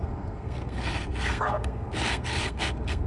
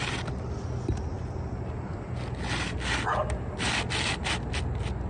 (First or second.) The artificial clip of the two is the first